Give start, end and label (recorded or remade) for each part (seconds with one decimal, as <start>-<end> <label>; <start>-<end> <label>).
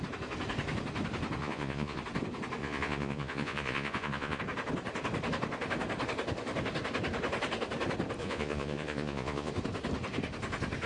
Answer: 0.0-1.4 recorded; 1.4-2.0 remade; 2.0-2.6 recorded; 2.6-4.4 remade; 4.4-8.2 recorded; 8.2-9.5 remade; 9.5-10.9 recorded